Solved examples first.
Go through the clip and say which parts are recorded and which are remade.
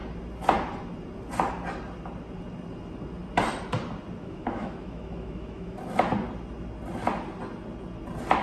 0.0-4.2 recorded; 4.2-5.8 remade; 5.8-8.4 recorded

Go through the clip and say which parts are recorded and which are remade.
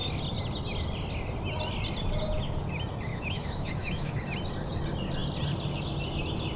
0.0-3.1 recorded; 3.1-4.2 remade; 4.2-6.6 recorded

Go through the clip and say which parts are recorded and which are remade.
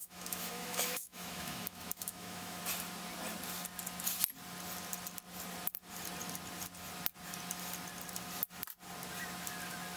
0.0-2.6 remade; 2.6-10.0 recorded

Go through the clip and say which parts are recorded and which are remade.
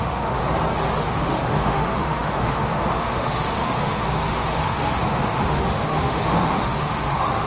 0.0-0.4 remade; 0.4-1.0 recorded; 1.0-7.5 remade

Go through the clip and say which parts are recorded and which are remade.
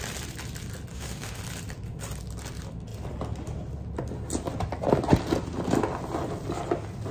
0.0-0.9 recorded; 0.9-1.4 remade; 1.4-7.1 recorded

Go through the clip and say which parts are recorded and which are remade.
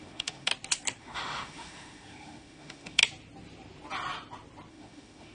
0.0-0.5 remade; 0.5-1.0 recorded; 1.0-3.0 remade; 3.0-4.7 recorded; 4.7-5.3 remade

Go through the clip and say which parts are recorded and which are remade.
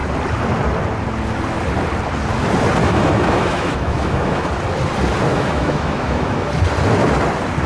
0.0-2.8 recorded; 2.8-4.5 remade; 4.5-5.3 recorded; 5.3-6.5 remade; 6.5-7.7 recorded